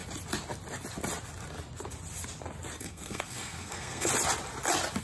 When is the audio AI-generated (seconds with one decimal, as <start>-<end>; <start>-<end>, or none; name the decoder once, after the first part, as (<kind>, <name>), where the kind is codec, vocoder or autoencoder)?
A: 2.8-4.1 (codec, SNAC)